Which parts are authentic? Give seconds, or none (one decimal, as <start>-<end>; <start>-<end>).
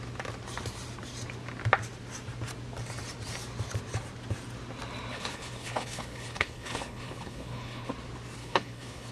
0.0-5.1; 7.9-8.4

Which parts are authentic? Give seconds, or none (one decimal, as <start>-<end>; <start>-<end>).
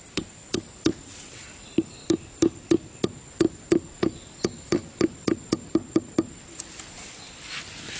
0.0-8.0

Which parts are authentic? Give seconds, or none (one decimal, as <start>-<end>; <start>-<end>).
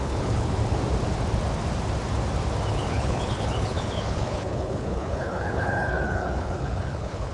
0.6-2.7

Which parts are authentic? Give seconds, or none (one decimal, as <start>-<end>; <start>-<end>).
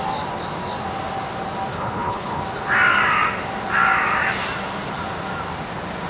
0.0-1.7; 2.4-6.1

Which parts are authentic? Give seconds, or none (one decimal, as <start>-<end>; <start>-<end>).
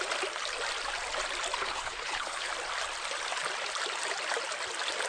0.0-1.6; 2.5-5.1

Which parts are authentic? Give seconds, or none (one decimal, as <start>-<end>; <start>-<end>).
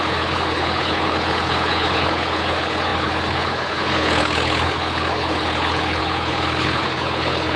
none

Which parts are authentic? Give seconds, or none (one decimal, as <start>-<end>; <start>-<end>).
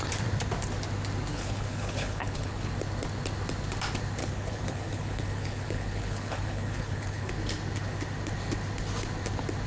0.0-1.3; 2.7-4.2; 7.3-9.7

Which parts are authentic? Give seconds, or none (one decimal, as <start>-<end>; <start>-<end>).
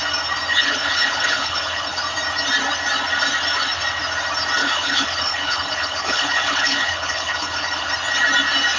0.0-0.5; 2.0-4.6; 7.9-8.8